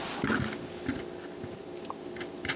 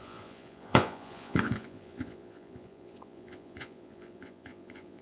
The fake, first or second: second